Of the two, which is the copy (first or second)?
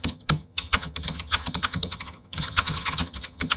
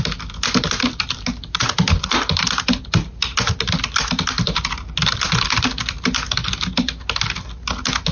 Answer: first